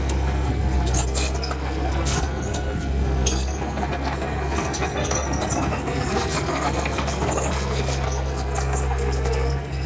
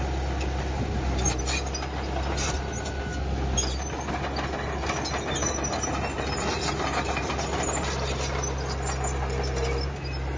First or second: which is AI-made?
first